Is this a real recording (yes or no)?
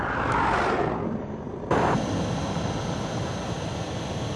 yes